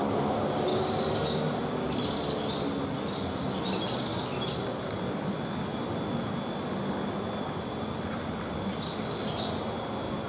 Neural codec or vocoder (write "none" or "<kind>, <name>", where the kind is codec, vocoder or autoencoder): none